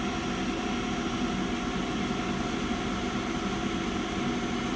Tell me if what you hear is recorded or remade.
recorded